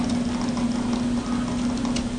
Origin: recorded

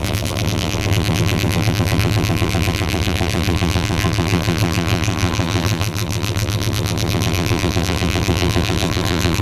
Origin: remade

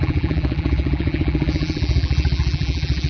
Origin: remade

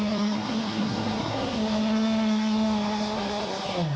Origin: remade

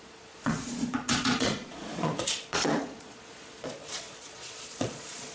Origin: remade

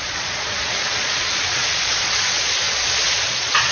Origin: remade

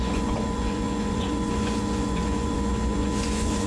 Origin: remade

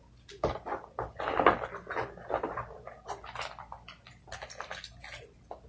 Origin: recorded